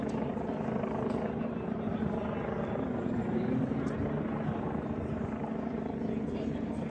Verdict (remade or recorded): recorded